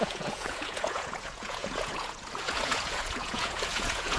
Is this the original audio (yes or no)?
no